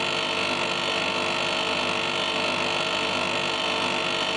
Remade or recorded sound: recorded